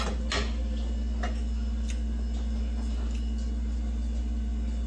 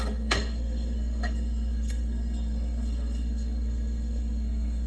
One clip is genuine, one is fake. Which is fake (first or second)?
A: second